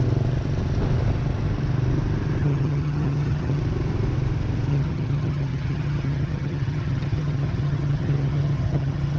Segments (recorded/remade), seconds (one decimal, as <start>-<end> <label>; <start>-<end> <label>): 0.0-2.4 recorded; 2.4-3.6 remade; 3.6-4.7 recorded; 4.7-9.2 remade